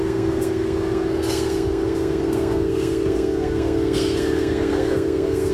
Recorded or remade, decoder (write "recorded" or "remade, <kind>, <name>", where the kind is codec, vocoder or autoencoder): remade, codec, SNAC